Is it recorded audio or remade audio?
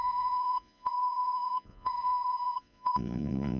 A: remade